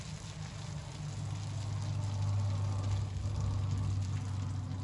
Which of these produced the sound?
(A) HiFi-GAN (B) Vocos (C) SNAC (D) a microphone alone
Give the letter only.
D